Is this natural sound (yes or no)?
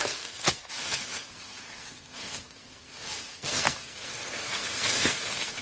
no